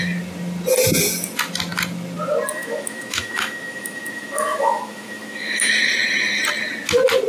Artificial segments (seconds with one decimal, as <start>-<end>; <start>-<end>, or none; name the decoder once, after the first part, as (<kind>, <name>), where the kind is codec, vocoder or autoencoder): 2.5-5.7 (autoencoder, DAC-VAE)